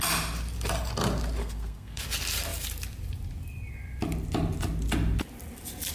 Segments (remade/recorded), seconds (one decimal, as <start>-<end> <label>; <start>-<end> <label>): 0.0-1.4 recorded; 1.4-2.0 remade; 2.0-5.9 recorded